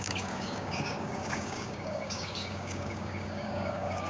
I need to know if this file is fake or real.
fake